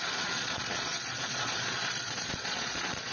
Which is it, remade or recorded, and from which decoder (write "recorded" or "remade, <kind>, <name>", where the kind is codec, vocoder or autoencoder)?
remade, vocoder, Vocos